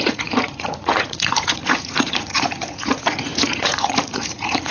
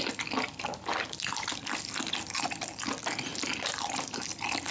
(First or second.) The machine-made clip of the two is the first